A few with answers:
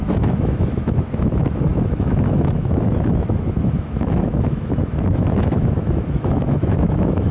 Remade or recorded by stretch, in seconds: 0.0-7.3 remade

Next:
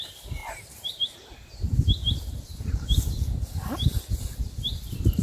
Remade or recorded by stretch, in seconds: 0.0-5.2 recorded